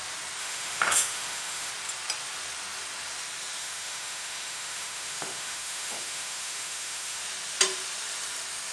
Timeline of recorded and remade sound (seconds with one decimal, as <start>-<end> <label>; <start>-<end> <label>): 0.0-0.4 recorded; 0.4-1.7 remade; 1.7-3.6 recorded; 3.6-7.2 remade; 7.2-8.7 recorded